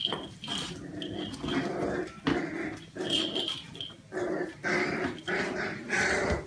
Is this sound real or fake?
real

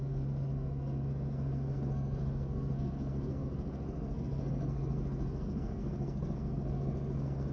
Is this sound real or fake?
fake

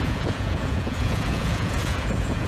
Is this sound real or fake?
fake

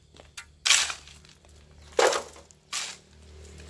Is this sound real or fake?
real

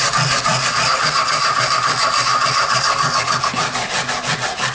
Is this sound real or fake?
real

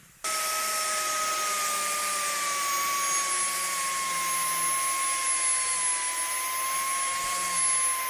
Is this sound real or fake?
real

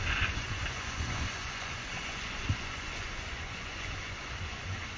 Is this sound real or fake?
fake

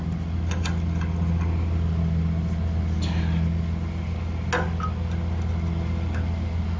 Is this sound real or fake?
real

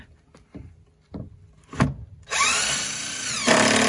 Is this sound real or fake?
real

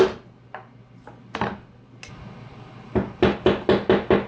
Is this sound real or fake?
real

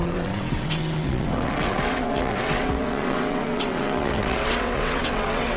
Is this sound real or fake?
fake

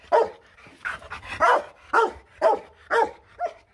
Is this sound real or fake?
fake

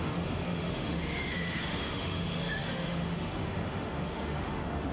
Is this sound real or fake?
fake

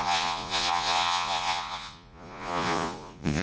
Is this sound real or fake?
fake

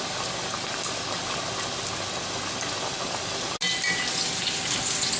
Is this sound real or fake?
real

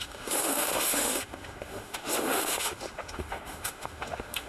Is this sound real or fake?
fake